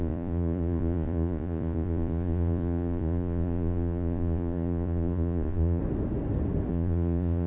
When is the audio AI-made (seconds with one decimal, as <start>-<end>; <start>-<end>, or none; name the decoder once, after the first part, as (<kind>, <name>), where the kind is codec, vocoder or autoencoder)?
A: 0.0-5.8 (vocoder, Vocos); 6.7-7.5